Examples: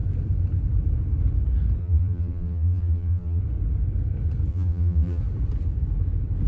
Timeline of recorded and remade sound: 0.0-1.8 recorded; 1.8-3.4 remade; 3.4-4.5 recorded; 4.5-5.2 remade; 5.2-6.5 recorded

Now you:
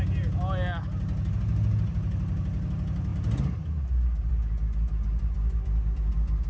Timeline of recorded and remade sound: 0.0-6.5 recorded

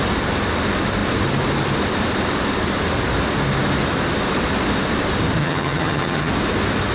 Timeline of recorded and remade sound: 0.0-5.4 recorded; 5.4-6.3 remade; 6.3-6.9 recorded

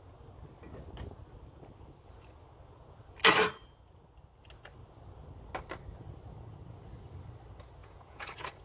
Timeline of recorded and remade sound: 0.0-7.8 recorded; 7.8-8.6 remade

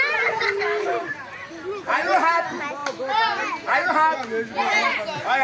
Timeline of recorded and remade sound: 0.0-5.4 recorded

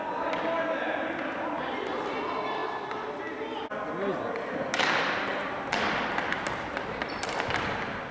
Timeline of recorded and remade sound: 0.0-8.1 recorded